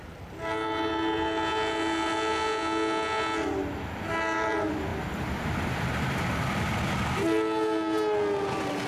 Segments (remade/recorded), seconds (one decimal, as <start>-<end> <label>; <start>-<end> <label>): 0.0-4.9 recorded; 4.9-5.9 remade; 5.9-8.9 recorded